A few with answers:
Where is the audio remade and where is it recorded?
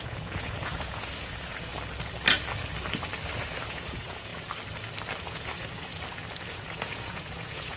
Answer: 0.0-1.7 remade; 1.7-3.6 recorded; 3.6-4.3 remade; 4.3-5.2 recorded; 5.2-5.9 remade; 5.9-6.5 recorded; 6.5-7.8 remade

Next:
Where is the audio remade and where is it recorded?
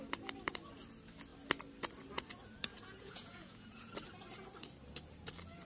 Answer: 0.0-2.7 recorded; 2.7-3.9 remade; 3.9-5.6 recorded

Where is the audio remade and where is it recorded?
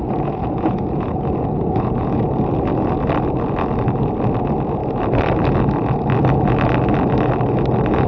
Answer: 0.0-2.2 remade; 2.2-8.1 recorded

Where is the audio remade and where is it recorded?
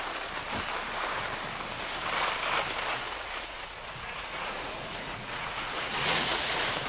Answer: 0.0-2.9 recorded; 2.9-6.5 remade; 6.5-6.9 recorded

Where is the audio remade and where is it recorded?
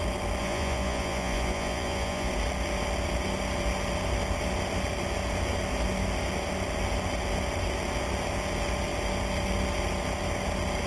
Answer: 0.0-0.4 recorded; 0.4-2.3 remade; 2.3-10.9 recorded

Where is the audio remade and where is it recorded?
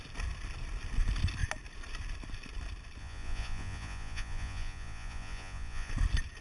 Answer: 0.0-3.0 recorded; 3.0-5.9 remade; 5.9-6.4 recorded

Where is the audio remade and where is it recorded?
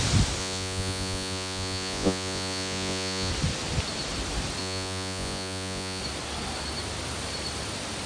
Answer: 0.0-0.4 recorded; 0.4-3.3 remade; 3.3-4.6 recorded; 4.6-6.0 remade; 6.0-8.1 recorded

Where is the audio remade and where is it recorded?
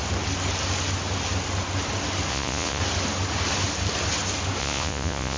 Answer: 0.0-2.3 recorded; 2.3-2.8 remade; 2.8-4.6 recorded; 4.6-5.4 remade